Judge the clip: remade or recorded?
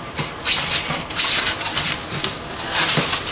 recorded